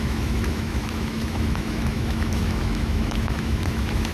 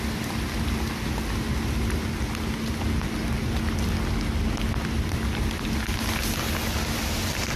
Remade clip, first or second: first